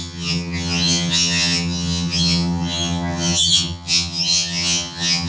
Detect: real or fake fake